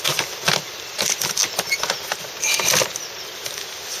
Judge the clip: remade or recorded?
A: recorded